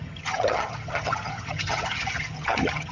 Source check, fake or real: fake